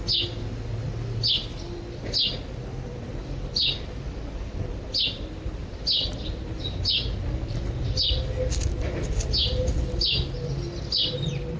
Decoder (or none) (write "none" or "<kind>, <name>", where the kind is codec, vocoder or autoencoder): none